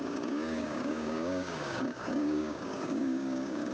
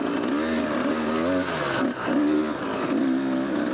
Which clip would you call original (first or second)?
second